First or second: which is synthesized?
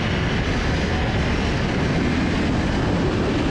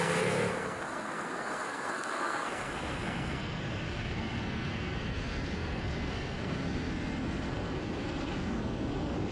second